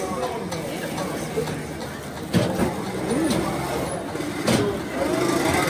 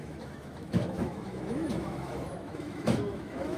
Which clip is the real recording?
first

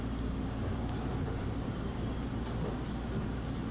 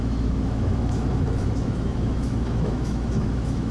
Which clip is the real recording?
first